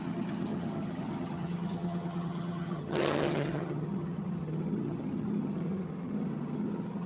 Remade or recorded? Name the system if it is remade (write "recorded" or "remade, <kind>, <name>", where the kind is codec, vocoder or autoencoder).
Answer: remade, vocoder, HiFi-GAN